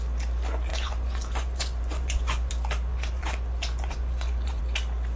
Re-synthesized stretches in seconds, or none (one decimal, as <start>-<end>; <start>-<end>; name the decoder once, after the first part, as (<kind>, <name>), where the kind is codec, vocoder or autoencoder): 0.7-2.5 (vocoder, Vocos); 2.9-4.6